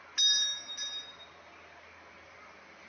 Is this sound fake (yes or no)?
no